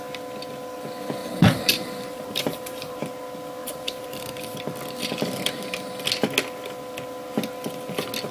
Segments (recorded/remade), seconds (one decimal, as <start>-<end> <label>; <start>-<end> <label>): 0.0-1.2 recorded; 1.2-3.0 remade; 3.0-3.6 recorded; 3.6-4.4 remade; 4.4-8.3 recorded